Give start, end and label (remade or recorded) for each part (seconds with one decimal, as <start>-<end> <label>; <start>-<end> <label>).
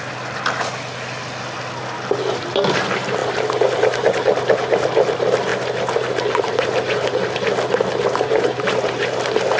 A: 0.0-9.6 recorded